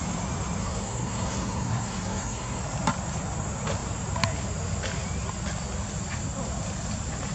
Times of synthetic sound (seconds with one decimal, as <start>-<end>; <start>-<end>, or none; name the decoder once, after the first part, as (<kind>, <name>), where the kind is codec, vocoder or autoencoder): 0.6-2.6 (codec, SNAC)

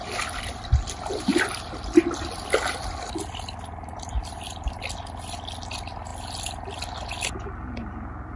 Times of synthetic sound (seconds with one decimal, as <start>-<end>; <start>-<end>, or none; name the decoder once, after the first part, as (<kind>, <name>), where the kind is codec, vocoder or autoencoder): none